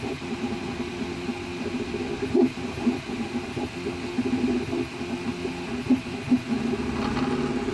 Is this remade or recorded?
recorded